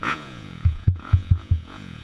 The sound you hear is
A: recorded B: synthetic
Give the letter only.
B